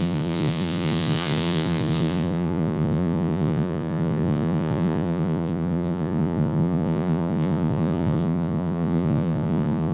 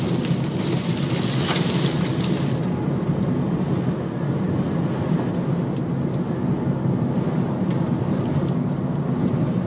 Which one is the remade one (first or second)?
first